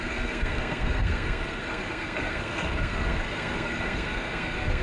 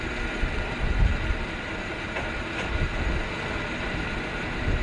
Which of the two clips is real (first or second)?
second